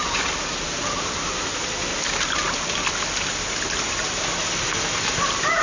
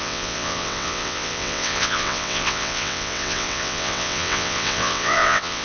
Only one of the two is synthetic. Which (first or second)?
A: second